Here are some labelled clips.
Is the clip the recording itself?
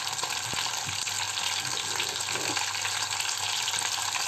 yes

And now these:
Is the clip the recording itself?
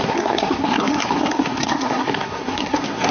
no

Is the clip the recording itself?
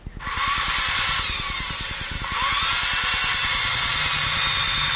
yes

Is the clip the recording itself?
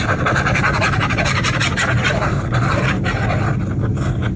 yes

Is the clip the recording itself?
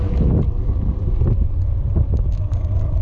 yes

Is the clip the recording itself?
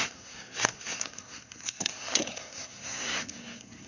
no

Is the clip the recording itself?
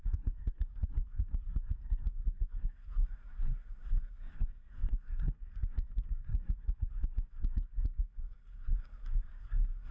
no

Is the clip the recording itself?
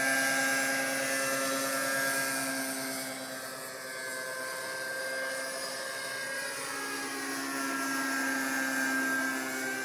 yes